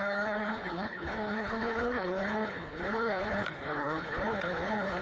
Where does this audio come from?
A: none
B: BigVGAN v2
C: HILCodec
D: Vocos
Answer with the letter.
C